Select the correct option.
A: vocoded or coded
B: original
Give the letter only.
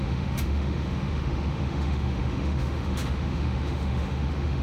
A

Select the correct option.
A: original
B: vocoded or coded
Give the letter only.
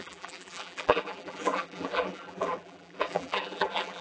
B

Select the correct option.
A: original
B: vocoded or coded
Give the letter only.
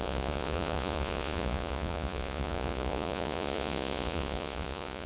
B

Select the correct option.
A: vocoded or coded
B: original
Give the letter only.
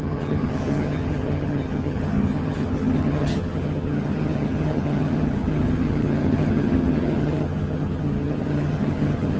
A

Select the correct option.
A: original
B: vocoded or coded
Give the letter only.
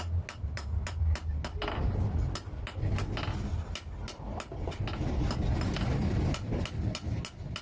A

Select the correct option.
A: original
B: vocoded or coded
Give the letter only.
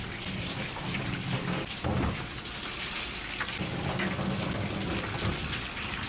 A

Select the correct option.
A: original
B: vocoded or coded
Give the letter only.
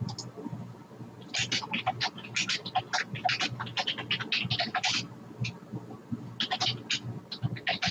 A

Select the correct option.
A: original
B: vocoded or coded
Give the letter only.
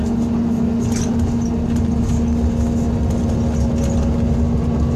A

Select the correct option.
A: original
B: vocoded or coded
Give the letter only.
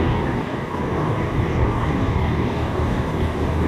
B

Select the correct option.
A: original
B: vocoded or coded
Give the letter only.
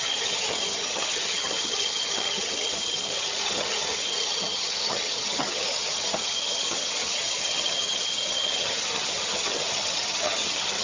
B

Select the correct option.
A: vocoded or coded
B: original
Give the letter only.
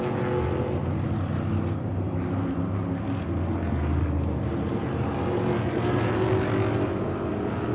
B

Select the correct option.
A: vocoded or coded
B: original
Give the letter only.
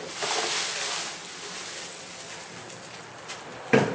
B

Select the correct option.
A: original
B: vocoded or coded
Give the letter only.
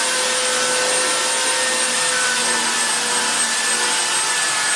A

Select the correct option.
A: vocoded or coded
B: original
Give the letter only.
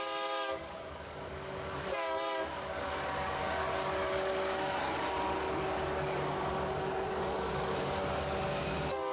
A